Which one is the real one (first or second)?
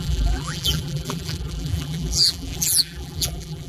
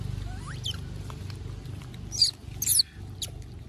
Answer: second